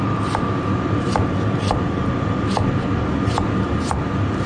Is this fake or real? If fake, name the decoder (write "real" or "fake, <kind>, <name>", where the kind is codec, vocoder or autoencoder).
real